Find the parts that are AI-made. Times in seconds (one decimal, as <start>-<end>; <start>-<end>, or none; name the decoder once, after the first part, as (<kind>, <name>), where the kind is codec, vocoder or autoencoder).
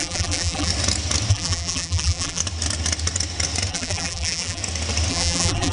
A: 0.0-0.7 (vocoder, BigVGAN v2); 1.3-2.4; 3.7-4.6; 5.1-5.7